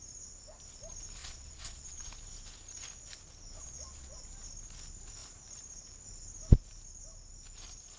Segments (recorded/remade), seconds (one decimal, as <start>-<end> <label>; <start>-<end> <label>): 0.0-1.2 recorded; 1.2-2.1 remade; 2.1-3.6 recorded; 3.6-4.2 remade; 4.2-8.0 recorded

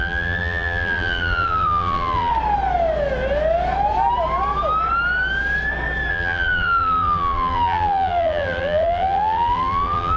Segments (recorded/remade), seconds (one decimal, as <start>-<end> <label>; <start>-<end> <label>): 0.0-2.3 remade; 2.3-6.1 recorded; 6.1-10.2 remade

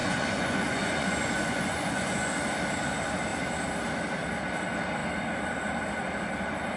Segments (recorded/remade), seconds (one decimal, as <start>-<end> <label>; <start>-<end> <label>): 0.0-2.4 remade; 2.4-6.8 recorded

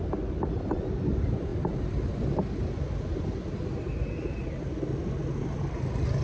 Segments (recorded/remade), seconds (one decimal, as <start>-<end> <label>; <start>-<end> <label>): 0.0-6.2 recorded

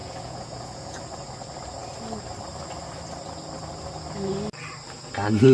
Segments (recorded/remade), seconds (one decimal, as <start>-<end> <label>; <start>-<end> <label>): 0.0-1.0 remade; 1.0-5.5 recorded